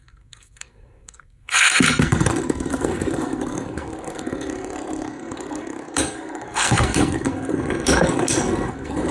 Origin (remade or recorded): remade